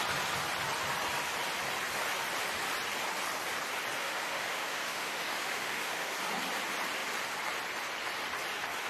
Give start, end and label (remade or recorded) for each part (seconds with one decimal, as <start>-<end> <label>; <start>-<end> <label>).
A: 0.0-4.0 recorded; 4.0-6.1 remade; 6.1-8.9 recorded